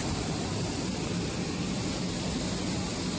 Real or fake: real